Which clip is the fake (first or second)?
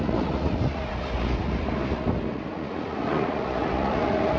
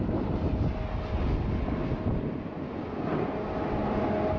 first